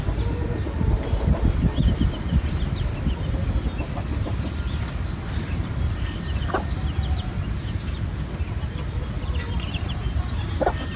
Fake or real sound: real